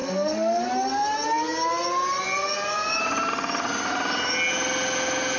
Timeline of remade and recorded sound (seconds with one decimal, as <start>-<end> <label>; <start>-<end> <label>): 0.0-0.6 remade; 0.6-5.4 recorded